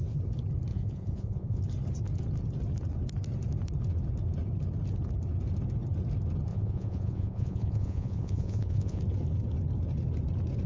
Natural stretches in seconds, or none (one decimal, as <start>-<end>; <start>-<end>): 0.0-0.7; 1.6-6.5; 9.0-10.7